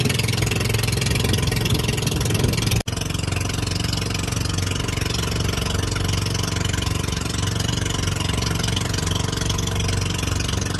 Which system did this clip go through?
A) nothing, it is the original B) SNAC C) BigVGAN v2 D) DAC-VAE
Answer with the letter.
A